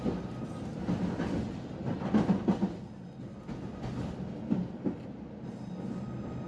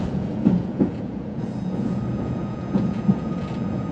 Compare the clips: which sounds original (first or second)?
first